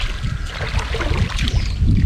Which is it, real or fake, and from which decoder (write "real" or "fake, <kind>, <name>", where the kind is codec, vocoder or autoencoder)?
real